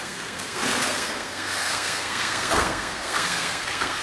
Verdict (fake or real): fake